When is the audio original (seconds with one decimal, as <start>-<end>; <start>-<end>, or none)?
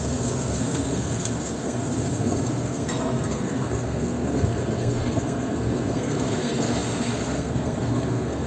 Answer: none